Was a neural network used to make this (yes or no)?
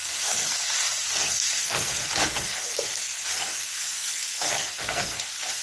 yes